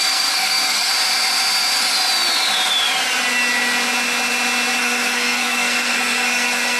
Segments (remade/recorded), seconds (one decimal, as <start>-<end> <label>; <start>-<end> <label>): 0.0-0.9 remade; 0.9-4.8 recorded; 4.8-6.8 remade